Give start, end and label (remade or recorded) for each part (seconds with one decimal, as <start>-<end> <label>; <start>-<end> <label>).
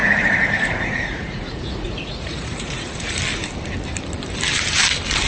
0.0-3.2 remade; 3.2-5.3 recorded